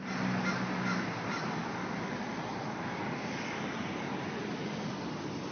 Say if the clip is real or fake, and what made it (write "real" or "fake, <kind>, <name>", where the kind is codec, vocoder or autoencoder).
real